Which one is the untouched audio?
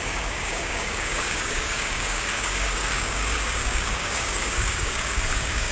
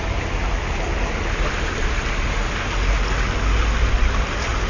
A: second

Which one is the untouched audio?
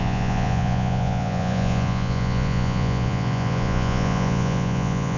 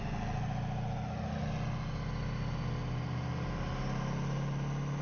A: second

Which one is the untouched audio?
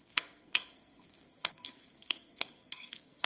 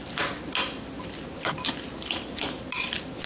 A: second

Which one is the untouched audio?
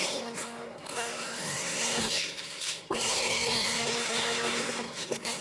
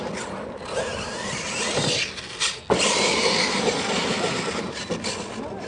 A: second